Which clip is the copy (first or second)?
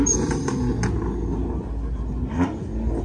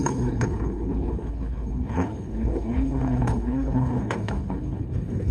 second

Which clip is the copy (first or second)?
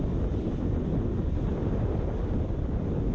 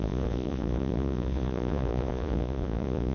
second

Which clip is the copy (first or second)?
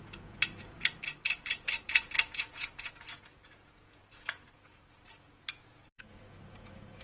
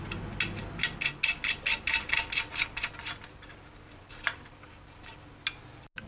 first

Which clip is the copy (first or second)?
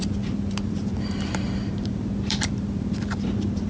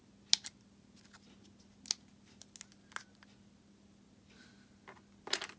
first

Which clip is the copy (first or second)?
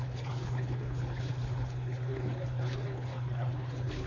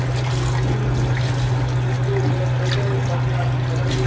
first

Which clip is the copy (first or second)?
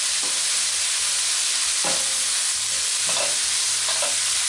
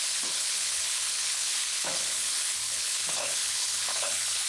second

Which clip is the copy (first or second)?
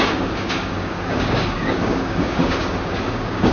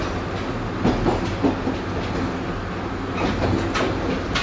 first